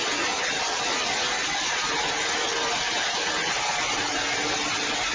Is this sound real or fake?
real